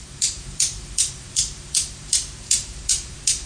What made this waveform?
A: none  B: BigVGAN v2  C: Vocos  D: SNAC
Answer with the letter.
B